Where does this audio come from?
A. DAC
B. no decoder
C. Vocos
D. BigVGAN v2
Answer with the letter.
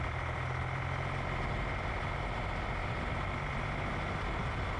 B